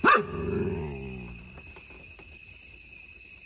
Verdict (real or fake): real